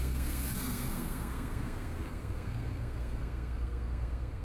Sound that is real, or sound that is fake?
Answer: fake